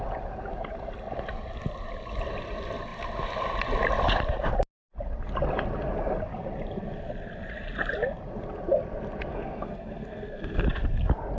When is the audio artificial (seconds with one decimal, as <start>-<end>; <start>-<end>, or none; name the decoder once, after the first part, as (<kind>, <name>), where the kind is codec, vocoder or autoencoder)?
9.3-10.6 (codec, SNAC)